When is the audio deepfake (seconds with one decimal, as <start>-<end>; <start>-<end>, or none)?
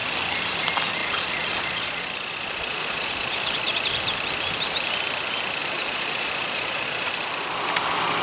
1.0-3.8; 5.6-7.1